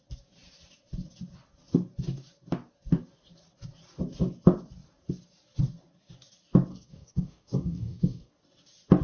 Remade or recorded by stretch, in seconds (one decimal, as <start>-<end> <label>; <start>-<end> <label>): 0.0-6.7 recorded; 6.7-8.3 remade; 8.3-9.0 recorded